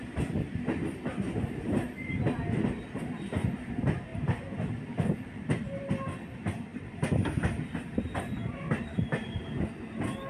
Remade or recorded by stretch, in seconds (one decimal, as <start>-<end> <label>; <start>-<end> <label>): 0.0-4.1 recorded; 4.1-5.4 remade; 5.4-6.7 recorded; 6.7-7.7 remade; 7.7-10.3 recorded